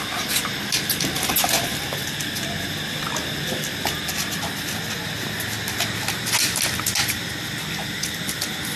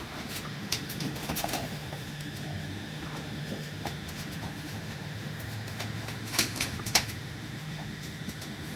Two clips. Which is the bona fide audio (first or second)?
first